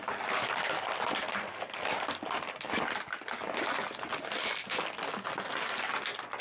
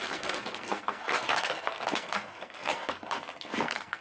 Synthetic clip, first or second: second